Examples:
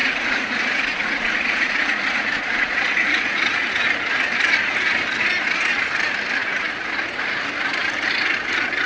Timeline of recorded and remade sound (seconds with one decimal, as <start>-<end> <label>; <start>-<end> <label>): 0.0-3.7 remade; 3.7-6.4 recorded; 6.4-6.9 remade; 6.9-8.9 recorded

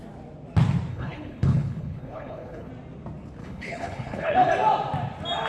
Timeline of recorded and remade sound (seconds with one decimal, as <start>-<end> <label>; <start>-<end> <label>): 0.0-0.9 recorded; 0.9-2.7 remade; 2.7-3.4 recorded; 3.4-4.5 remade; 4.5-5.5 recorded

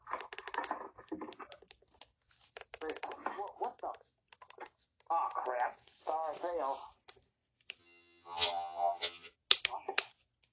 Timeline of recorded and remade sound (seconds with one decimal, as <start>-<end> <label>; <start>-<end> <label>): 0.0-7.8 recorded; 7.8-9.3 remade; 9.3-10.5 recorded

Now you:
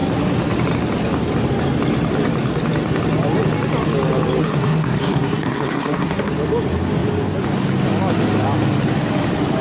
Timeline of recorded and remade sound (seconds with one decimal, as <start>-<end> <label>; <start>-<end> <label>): 0.0-4.4 recorded; 4.4-6.3 remade; 6.3-9.6 recorded

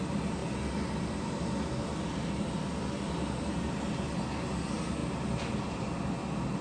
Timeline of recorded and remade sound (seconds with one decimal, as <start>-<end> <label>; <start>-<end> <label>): 0.0-6.6 recorded

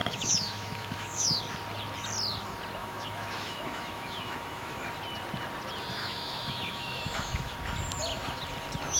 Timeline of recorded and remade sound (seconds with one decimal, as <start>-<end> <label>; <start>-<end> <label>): 0.0-1.4 remade; 1.4-2.8 recorded; 2.8-4.8 remade; 4.8-6.0 recorded; 6.0-7.5 remade; 7.5-9.0 recorded

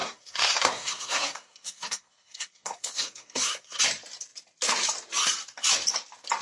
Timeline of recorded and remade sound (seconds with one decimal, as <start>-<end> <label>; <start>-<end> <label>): 0.0-3.8 remade; 3.8-6.4 recorded

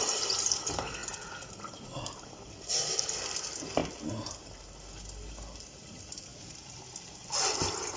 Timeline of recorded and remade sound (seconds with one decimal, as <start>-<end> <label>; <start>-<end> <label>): 0.0-8.0 recorded